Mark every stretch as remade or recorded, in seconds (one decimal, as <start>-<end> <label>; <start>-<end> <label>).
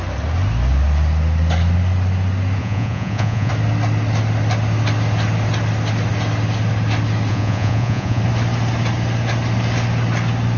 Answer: 0.0-2.6 recorded; 2.6-3.5 remade; 3.5-7.3 recorded; 7.3-8.2 remade; 8.2-10.6 recorded